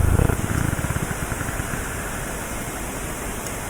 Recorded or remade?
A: recorded